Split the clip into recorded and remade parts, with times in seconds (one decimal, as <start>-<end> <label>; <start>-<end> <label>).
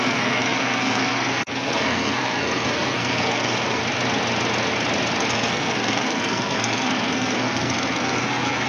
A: 0.0-3.8 remade; 3.8-5.3 recorded; 5.3-8.7 remade